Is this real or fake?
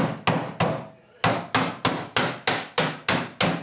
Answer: real